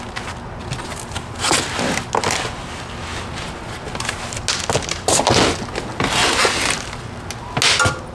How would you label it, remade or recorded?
recorded